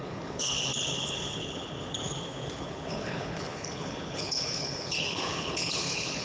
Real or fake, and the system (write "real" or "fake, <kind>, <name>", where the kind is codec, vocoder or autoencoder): fake, codec, HILCodec